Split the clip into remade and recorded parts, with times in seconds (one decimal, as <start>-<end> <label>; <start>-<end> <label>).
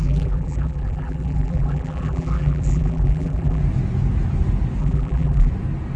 0.0-3.6 remade; 3.6-4.8 recorded; 4.8-5.5 remade; 5.5-6.0 recorded